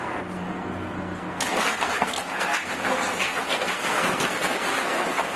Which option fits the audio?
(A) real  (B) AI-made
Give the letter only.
B